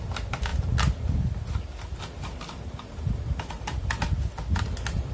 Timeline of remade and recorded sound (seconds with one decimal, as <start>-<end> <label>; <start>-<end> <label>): 0.0-5.1 recorded